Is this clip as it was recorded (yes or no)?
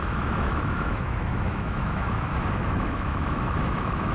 no